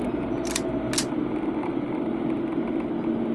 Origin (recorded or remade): recorded